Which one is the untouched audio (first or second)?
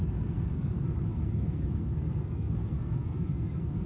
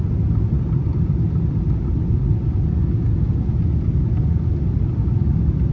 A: second